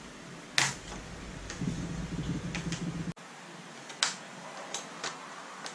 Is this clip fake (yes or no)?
no